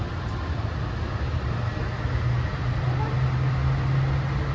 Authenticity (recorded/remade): recorded